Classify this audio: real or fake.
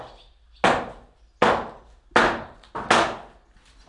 real